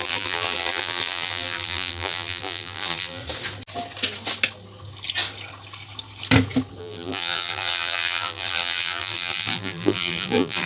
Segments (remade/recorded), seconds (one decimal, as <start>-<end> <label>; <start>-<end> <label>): 0.0-3.2 remade; 3.2-6.8 recorded; 6.8-10.7 remade